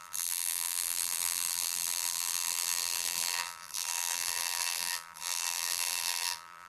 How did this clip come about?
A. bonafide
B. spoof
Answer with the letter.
B